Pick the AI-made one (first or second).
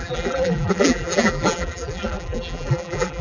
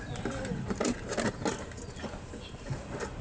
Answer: first